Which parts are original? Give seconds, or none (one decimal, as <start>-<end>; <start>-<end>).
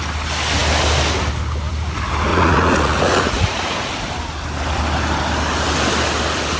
0.0-2.3; 3.9-6.6